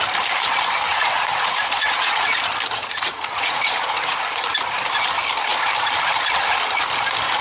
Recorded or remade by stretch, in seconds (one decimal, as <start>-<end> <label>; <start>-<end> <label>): 0.0-0.9 recorded; 0.9-2.4 remade; 2.4-2.8 recorded; 2.8-4.2 remade; 4.2-7.4 recorded